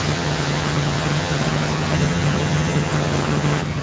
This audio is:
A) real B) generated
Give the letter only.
B